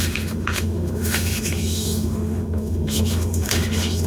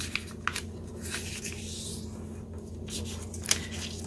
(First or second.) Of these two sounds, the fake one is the first